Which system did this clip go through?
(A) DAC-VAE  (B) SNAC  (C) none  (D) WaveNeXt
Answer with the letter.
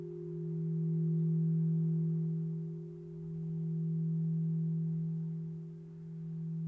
C